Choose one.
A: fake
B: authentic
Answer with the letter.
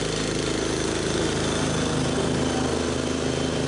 B